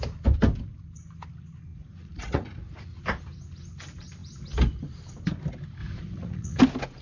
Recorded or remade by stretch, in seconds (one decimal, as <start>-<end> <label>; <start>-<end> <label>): 0.0-1.7 recorded; 1.7-3.0 remade; 3.0-5.8 recorded; 5.8-6.6 remade; 6.6-7.0 recorded